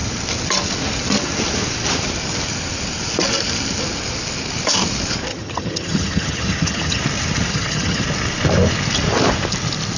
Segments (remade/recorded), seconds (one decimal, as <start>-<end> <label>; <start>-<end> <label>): 0.0-5.3 recorded; 5.3-7.0 remade; 7.0-7.5 recorded; 7.5-8.0 remade; 8.0-10.0 recorded